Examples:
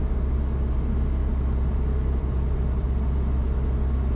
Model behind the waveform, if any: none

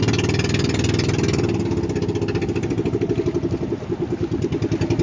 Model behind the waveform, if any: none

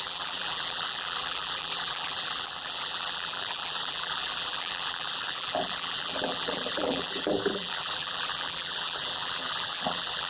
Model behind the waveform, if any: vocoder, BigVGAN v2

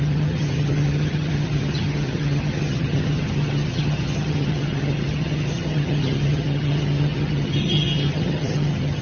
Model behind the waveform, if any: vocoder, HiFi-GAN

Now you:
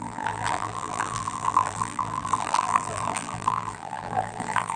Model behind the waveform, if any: vocoder, BigVGAN v2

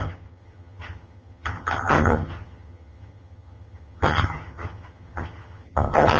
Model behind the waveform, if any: vocoder, HiFi-GAN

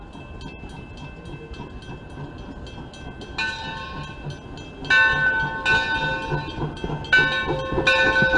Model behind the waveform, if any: none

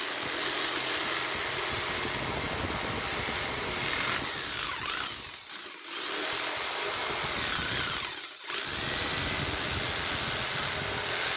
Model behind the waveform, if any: none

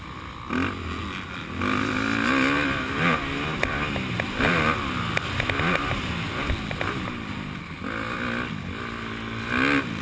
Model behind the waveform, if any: none